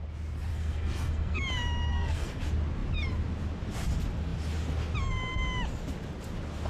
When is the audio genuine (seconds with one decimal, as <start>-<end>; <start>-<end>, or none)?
0.0-0.5; 1.4-1.9; 2.4-6.7